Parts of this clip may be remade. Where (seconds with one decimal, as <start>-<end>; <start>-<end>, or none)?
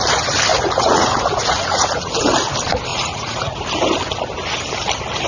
0.5-2.1; 2.9-3.6